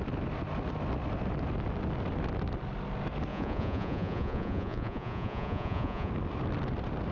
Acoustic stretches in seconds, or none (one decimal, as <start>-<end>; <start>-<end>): 0.0-3.3; 6.1-7.1